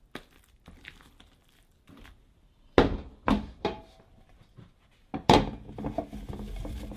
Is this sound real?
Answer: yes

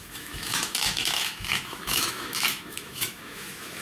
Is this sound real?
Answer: no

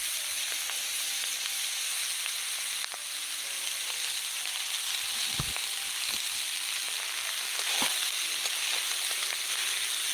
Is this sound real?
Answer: yes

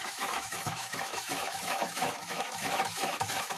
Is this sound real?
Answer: no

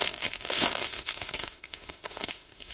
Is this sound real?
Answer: no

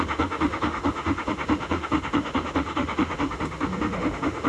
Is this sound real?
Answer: no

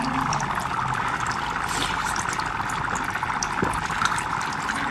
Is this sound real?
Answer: yes